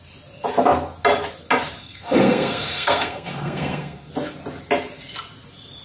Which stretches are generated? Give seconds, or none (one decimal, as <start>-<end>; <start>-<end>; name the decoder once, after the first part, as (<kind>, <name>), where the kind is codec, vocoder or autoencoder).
1.8-4.1 (codec, SNAC)